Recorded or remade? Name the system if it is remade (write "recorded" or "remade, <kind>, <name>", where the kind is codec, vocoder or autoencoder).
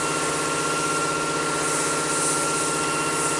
recorded